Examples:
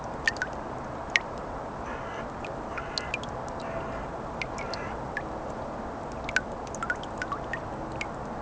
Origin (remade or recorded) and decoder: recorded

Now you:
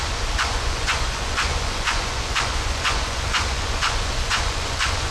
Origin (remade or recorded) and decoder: remade, vocoder, Vocos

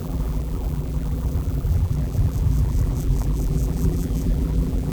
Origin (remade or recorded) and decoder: remade, vocoder, BigVGAN v2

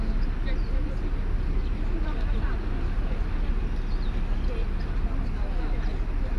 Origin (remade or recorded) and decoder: recorded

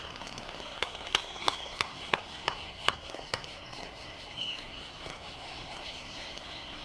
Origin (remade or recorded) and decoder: remade, codec, SNAC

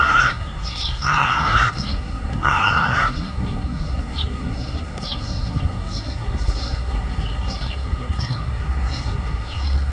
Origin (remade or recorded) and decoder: remade, codec, SNAC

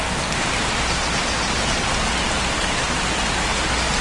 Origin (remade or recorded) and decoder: recorded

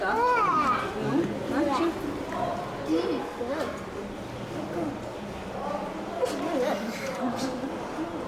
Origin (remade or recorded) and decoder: recorded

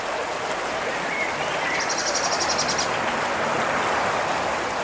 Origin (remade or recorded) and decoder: recorded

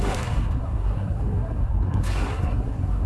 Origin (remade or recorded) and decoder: remade, codec, SNAC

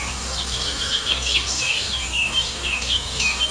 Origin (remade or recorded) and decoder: remade, codec, DAC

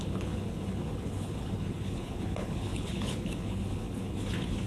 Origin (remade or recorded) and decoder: remade, codec, HILCodec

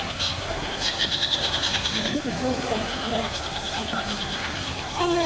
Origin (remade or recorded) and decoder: remade, codec, SNAC